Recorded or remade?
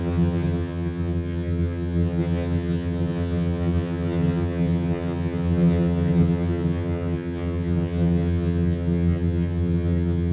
remade